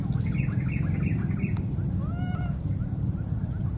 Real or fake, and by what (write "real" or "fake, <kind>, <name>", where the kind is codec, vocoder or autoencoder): real